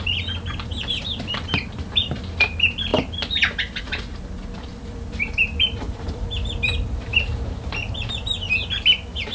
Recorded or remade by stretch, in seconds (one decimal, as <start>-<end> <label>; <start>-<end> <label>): 0.0-0.7 recorded; 0.7-2.2 remade; 2.2-4.7 recorded; 4.7-6.2 remade; 6.2-9.3 recorded